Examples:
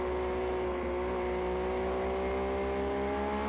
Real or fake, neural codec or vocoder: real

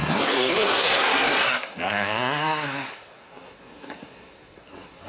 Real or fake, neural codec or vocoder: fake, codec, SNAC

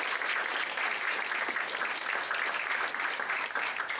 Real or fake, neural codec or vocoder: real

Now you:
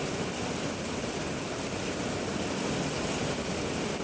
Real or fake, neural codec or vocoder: real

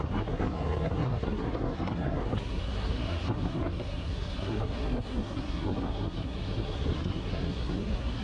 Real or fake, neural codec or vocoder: fake, codec, SNAC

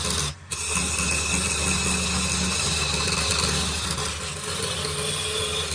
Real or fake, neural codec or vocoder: real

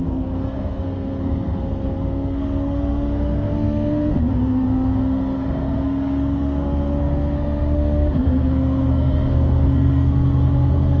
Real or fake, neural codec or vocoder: fake, codec, SNAC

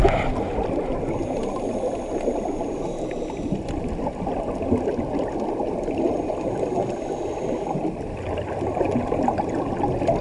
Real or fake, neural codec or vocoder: real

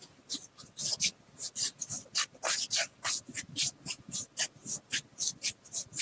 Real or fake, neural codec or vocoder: real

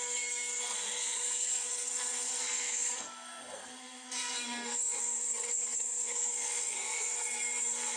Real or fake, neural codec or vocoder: fake, codec, SNAC